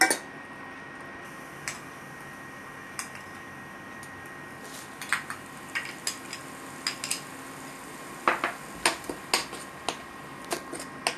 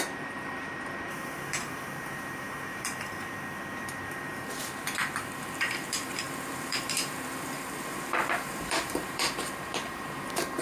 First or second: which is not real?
second